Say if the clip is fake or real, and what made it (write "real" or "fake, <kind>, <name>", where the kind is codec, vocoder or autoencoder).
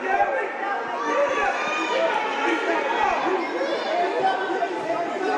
real